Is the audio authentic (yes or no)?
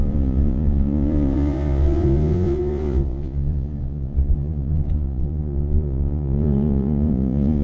no